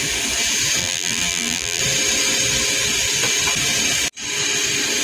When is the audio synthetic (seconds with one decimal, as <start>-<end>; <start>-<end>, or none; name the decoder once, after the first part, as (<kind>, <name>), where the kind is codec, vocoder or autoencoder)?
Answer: 0.8-1.8 (vocoder, BigVGAN v2)